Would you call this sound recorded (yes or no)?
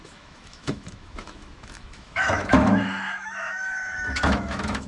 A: no